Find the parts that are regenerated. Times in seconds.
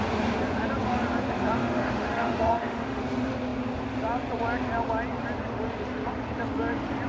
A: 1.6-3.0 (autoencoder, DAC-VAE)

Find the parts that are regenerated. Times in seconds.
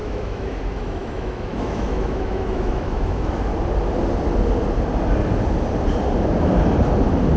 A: 0.0-3.5 (autoencoder, DAC-VAE)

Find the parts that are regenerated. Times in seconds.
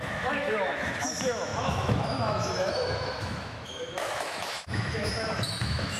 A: 0.0-6.0 (autoencoder, DAC-VAE)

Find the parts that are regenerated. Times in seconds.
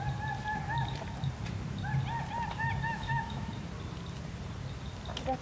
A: 2.9-3.5 (autoencoder, DAC-VAE)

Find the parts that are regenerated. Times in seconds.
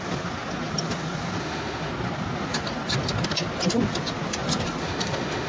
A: 1.4-1.9 (autoencoder, DAC-VAE); 4.8-5.5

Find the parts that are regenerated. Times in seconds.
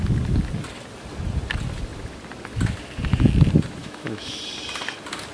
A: 3.8-4.4 (autoencoder, DAC-VAE)